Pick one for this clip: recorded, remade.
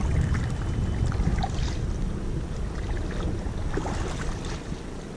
remade